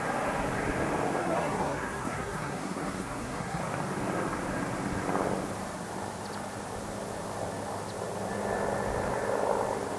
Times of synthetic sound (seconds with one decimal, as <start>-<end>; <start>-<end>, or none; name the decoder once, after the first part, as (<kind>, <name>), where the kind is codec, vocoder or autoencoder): 1.2-3.6 (codec, SNAC)